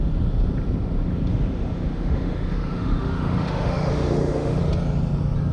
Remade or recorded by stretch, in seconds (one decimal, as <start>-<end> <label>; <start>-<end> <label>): 0.0-1.3 recorded; 1.3-4.6 remade; 4.6-5.5 recorded